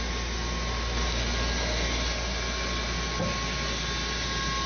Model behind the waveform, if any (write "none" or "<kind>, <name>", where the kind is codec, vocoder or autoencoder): none